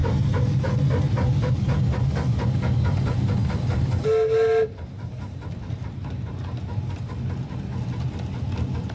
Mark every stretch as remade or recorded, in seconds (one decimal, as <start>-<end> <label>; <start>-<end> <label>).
0.0-4.0 recorded; 4.0-6.9 remade; 6.9-8.9 recorded